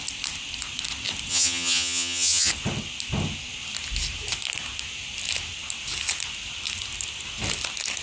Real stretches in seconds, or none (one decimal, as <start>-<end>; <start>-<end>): 0.0-1.3; 2.5-8.0